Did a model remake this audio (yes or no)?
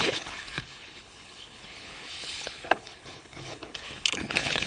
yes